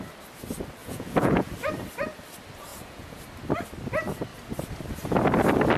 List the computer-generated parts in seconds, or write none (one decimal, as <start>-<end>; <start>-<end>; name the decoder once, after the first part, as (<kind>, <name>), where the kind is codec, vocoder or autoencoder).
0.8-1.5 (vocoder, Vocos); 2.7-3.2